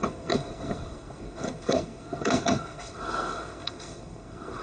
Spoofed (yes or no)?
yes